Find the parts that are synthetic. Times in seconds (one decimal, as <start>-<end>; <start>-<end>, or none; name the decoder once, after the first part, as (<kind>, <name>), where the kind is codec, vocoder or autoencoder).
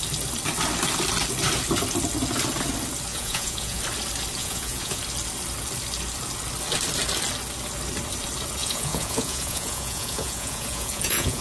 3.1-3.8 (vocoder, Vocos); 4.4-5.0; 8.6-11.4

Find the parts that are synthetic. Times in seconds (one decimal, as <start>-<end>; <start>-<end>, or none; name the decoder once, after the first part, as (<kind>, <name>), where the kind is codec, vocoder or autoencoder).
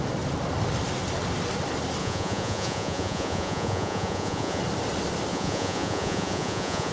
2.0-4.6 (vocoder, Vocos); 5.3-6.9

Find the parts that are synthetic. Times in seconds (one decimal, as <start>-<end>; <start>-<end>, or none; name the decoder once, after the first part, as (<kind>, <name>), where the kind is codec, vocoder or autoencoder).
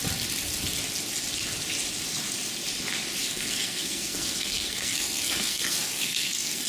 3.2-6.7 (codec, SNAC)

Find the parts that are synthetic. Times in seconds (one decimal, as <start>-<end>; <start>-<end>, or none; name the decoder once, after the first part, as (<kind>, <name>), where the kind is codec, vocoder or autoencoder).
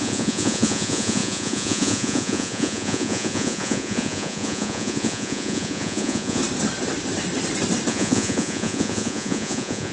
0.0-6.4 (vocoder, Vocos); 7.9-9.9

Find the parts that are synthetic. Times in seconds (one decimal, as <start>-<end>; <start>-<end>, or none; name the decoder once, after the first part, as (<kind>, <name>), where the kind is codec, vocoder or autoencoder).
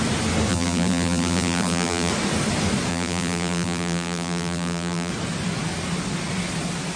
0.5-2.1 (vocoder, BigVGAN v2); 2.9-5.1